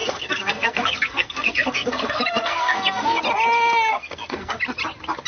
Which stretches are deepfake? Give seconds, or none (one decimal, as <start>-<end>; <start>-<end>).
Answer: 0.0-3.2; 3.9-4.6